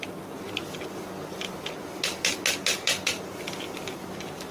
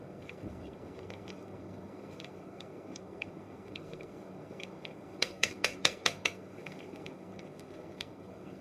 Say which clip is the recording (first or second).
first